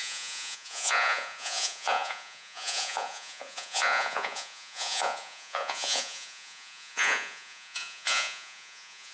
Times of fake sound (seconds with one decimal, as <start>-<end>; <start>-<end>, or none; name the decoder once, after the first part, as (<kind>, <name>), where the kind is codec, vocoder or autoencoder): 0.0-9.1 (vocoder, Vocos)